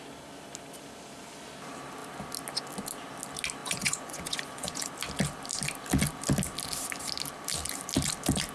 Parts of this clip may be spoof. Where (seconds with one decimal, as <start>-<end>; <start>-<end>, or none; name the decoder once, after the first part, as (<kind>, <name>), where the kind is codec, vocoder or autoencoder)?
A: 3.6-4.9 (vocoder, Vocos)